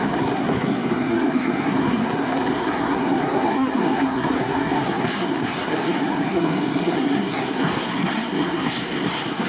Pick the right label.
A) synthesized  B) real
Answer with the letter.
A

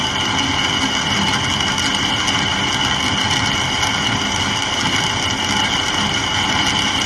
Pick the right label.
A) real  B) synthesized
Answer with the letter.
A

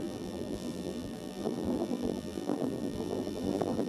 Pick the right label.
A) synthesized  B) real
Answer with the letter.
A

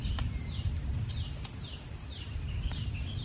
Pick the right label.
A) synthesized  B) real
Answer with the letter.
B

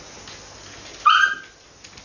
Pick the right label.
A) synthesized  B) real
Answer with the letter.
B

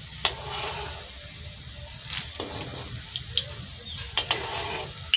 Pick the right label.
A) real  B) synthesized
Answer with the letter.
A